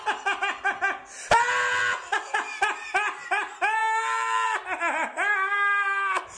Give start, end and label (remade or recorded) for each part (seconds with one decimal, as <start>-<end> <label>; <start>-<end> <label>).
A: 0.0-6.4 recorded